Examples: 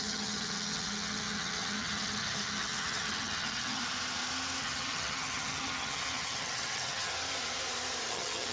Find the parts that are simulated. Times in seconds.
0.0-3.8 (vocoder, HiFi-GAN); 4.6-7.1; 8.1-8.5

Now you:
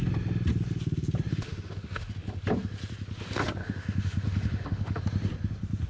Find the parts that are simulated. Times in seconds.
1.3-2.1 (autoencoder, DAC-VAE); 3.6-5.0